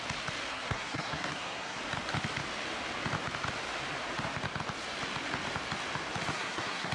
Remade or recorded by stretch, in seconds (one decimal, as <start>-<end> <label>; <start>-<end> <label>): 0.0-0.5 recorded; 0.5-1.8 remade; 1.8-6.3 recorded; 6.3-6.9 remade